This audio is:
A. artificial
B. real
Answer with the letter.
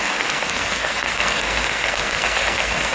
A